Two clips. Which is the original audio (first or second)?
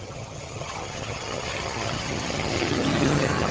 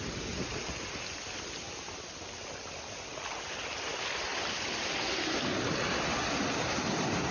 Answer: second